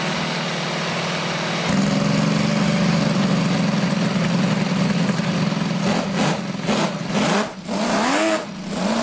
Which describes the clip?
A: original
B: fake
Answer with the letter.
A